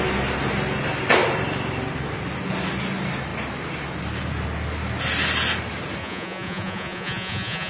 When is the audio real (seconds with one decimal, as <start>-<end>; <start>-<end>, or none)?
0.0-6.0